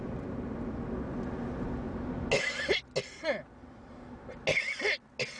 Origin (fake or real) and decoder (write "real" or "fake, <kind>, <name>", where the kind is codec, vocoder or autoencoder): real